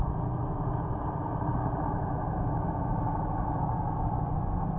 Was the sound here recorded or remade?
recorded